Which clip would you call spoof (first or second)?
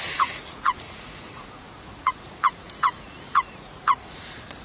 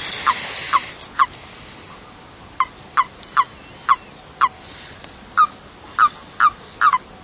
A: first